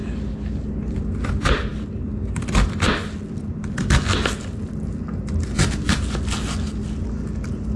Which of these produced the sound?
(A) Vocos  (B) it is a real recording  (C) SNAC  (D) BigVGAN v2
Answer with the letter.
B